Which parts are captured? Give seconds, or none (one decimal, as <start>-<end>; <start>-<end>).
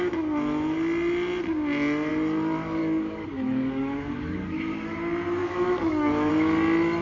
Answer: 0.0-2.8; 4.6-5.4; 6.3-7.0